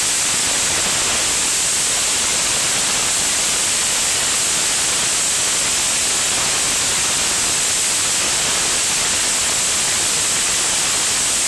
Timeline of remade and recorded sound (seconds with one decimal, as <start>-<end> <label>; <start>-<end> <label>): 0.0-2.3 recorded; 2.3-4.2 remade; 4.2-11.5 recorded